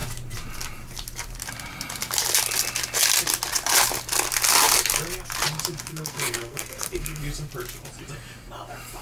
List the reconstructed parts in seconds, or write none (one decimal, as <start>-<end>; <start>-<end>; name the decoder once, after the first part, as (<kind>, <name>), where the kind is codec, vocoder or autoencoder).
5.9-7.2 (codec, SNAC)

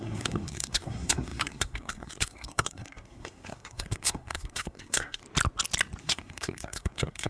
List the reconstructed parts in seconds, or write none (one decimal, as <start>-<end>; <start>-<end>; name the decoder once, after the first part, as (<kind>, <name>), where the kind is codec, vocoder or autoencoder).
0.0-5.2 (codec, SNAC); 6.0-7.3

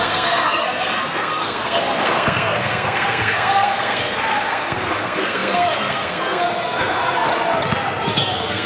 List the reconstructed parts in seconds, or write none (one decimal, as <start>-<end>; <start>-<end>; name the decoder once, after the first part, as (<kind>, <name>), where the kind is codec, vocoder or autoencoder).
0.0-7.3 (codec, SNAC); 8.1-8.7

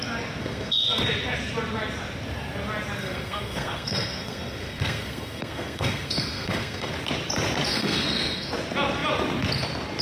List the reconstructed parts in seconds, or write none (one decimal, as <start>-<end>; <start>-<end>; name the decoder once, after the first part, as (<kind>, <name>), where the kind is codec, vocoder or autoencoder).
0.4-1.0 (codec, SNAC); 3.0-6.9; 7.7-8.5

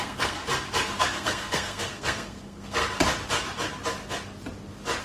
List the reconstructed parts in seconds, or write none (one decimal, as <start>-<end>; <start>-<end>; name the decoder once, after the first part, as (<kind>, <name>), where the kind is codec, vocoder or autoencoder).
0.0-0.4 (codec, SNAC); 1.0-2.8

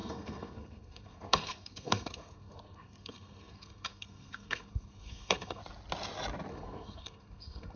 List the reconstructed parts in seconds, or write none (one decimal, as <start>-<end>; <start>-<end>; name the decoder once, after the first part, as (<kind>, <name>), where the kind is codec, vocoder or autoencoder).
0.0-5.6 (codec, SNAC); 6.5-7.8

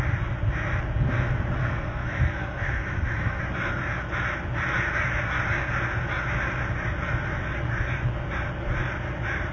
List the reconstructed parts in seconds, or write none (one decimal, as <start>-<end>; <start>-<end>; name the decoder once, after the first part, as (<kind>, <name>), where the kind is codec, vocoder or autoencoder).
1.6-3.4 (codec, SNAC)